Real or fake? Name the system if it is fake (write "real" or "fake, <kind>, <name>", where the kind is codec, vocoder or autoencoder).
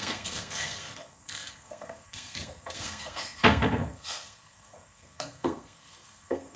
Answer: fake, codec, SNAC